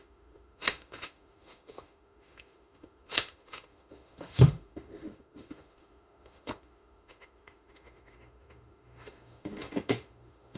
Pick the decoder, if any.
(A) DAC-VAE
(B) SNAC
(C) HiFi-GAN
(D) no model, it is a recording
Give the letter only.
A